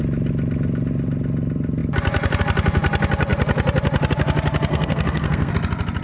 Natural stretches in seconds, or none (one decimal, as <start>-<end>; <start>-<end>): 0.0-4.7; 5.5-6.0